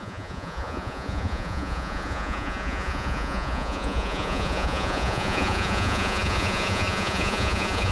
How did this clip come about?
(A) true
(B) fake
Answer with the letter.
B